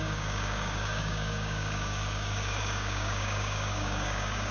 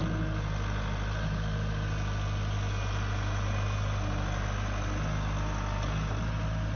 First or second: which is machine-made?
first